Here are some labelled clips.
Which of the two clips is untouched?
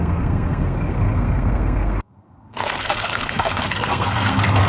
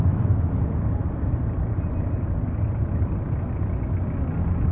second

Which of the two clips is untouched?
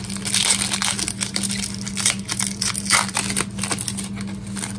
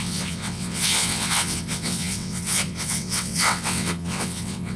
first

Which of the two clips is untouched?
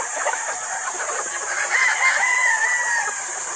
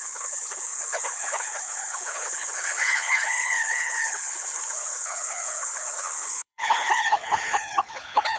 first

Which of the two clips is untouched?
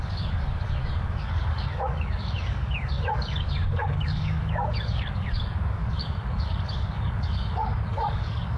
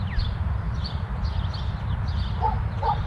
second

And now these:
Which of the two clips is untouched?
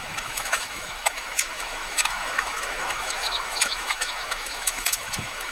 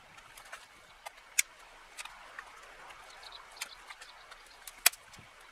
second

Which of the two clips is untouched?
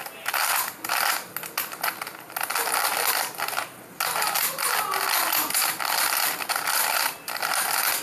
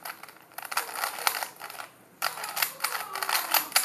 first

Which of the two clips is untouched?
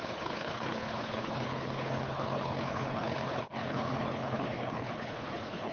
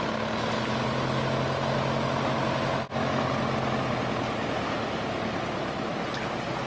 second